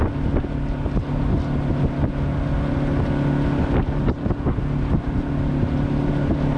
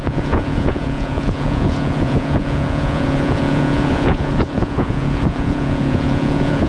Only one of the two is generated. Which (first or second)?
second